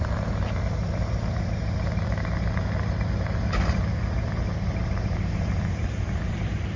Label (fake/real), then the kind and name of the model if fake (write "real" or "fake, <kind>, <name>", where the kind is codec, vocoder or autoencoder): real